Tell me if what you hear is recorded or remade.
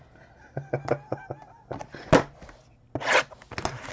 recorded